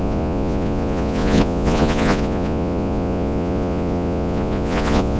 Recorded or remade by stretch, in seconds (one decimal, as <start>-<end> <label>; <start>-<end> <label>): 0.0-5.2 remade